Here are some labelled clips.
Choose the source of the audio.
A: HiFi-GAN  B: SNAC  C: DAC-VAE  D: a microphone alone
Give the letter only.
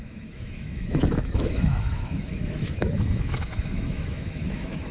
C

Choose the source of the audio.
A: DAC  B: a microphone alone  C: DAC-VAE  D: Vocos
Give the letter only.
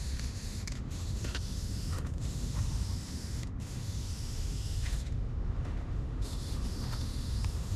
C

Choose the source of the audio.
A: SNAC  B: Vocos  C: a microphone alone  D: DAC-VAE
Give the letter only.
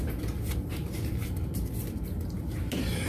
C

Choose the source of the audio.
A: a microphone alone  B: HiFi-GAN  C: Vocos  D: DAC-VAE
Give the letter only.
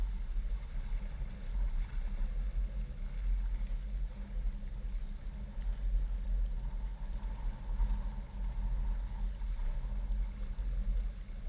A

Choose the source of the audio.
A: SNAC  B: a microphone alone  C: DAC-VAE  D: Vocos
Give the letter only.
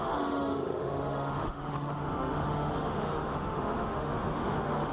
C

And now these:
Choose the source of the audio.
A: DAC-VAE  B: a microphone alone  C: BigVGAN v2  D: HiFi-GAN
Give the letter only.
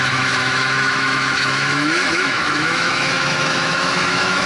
A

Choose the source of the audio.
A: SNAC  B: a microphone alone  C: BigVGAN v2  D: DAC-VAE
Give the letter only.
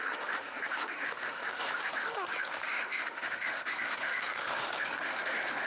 D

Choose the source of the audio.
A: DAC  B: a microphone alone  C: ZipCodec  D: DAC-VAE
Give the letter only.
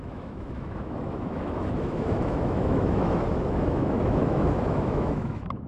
D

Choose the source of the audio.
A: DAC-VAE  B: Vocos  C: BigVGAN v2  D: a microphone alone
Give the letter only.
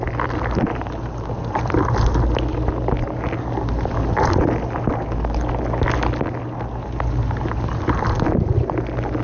D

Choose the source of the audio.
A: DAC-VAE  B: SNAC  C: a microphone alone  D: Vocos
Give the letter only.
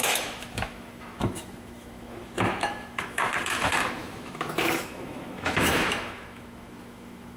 A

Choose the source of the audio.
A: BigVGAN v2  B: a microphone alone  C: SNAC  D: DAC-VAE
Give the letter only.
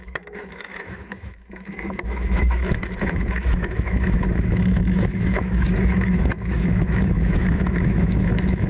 D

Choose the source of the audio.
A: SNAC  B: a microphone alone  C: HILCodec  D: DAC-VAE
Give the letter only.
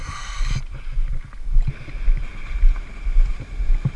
B